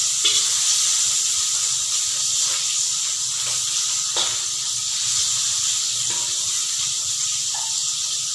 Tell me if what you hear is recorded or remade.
recorded